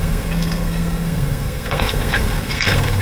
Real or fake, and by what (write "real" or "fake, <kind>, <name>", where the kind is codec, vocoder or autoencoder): fake, codec, SNAC